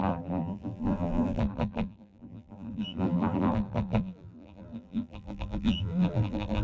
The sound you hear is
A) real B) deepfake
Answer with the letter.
B